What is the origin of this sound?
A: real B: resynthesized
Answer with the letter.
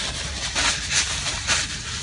A